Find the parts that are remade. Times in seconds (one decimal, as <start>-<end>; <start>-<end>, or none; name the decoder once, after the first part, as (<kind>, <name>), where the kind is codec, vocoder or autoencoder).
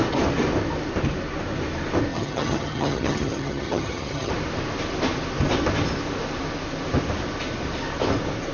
2.1-4.3 (vocoder, HiFi-GAN)